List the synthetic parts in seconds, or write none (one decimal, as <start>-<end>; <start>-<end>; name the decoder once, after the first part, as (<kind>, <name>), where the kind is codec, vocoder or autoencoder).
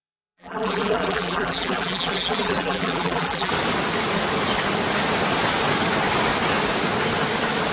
0.0-3.5 (vocoder, BigVGAN v2)